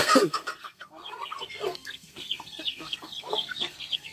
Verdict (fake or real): fake